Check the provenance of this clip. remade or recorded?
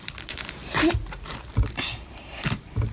recorded